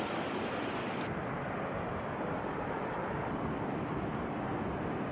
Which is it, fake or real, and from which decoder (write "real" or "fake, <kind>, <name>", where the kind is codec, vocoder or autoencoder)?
real